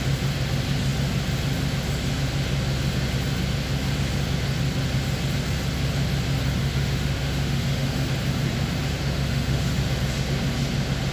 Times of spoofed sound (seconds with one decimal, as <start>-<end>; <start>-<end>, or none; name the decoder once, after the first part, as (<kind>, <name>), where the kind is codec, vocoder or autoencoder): 6.6-8.1 (autoencoder, DAC-VAE); 8.9-9.8